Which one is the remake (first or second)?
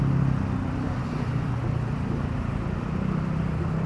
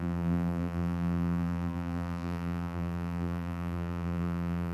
second